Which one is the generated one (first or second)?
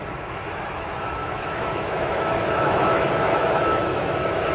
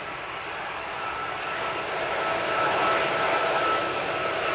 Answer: first